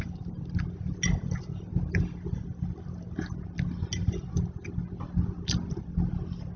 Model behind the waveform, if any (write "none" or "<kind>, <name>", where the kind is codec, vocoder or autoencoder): none